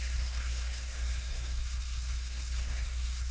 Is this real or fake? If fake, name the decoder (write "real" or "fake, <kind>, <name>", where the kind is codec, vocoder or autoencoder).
fake, codec, SNAC